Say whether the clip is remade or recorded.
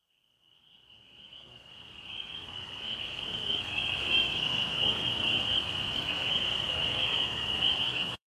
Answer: remade